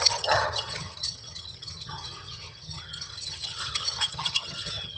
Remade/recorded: remade